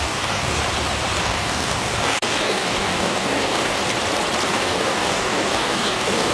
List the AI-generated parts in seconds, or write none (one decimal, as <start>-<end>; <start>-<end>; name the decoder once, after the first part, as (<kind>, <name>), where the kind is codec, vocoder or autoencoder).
0.0-0.6 (codec, DAC); 1.2-3.8; 4.5-6.3